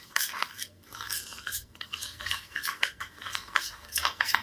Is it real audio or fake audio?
fake